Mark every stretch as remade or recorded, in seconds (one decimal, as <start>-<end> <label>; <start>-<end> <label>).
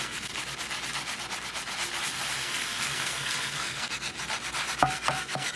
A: 0.0-0.4 remade; 0.4-2.4 recorded; 2.4-4.1 remade; 4.1-4.8 recorded; 4.8-5.6 remade